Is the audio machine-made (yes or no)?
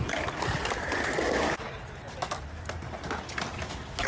no